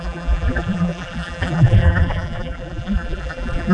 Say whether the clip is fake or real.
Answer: fake